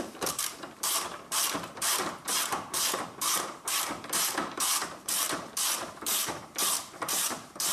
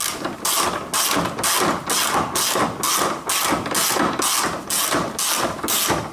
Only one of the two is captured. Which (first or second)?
second